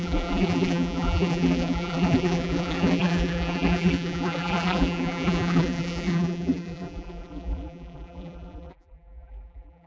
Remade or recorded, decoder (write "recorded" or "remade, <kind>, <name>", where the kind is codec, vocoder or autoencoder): remade, vocoder, BigVGAN v2